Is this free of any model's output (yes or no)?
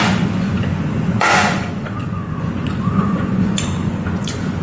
no